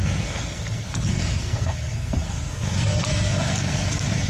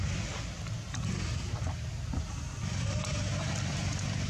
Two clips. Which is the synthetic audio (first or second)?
first